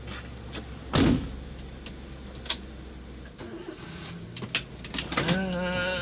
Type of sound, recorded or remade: recorded